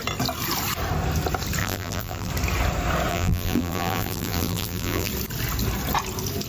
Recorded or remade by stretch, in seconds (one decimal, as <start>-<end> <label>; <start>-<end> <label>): 0.0-1.6 recorded; 1.6-2.3 remade; 2.3-3.1 recorded; 3.1-5.1 remade; 5.1-6.5 recorded